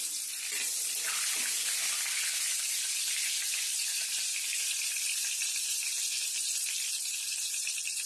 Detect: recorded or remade remade